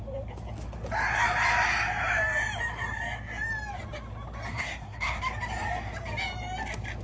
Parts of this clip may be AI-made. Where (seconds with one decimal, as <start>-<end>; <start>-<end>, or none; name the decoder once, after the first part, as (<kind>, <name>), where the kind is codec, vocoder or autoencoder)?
4.5-5.2 (codec, SNAC)